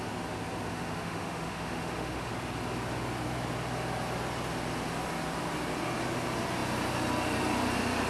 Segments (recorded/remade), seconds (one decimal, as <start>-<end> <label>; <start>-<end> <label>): 0.0-0.7 recorded; 0.7-2.3 remade; 2.3-8.1 recorded